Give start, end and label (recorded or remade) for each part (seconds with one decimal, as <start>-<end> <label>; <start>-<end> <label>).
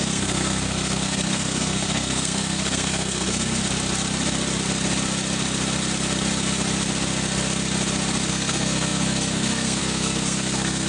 0.0-3.6 remade; 3.6-8.3 recorded; 8.3-10.9 remade